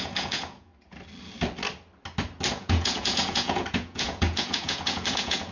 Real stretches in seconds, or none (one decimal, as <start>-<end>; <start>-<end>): 0.7-2.5

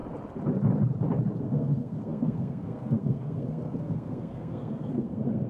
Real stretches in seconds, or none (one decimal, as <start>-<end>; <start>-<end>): 0.0-1.4

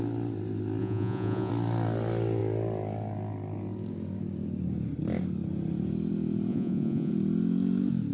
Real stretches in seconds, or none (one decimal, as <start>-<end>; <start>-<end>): 0.0-0.8; 1.5-6.5; 7.1-8.1

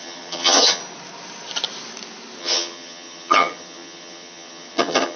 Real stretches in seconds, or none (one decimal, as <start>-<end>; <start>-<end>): 0.8-2.4

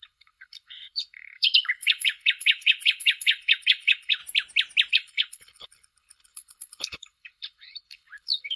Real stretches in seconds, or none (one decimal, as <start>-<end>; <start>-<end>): 4.2-4.9